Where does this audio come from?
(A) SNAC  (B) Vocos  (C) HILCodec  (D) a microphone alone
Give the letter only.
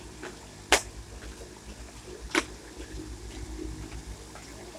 D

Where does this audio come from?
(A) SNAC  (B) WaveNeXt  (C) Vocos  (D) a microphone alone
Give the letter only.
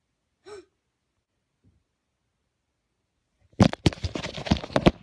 D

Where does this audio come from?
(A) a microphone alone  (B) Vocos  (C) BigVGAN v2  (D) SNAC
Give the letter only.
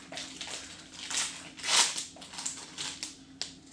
A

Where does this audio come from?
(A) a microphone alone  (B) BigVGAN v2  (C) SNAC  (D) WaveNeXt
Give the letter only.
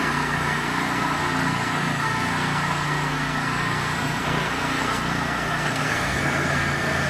C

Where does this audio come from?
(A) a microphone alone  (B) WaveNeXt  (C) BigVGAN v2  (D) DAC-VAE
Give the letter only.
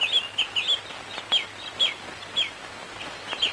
A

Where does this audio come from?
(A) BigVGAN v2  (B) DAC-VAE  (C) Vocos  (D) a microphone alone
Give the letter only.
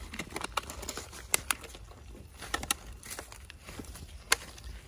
D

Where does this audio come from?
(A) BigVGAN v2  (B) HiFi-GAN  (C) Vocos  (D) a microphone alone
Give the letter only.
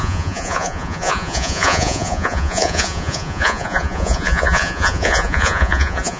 C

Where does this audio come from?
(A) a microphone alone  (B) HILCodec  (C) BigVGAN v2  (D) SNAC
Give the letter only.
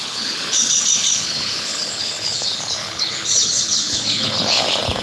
B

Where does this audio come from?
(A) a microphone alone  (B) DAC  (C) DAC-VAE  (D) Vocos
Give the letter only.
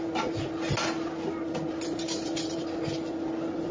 A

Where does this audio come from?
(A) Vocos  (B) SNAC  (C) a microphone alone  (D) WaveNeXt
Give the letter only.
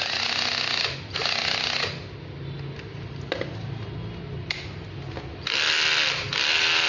C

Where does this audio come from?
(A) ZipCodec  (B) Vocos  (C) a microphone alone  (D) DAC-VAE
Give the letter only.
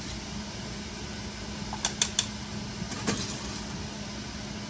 C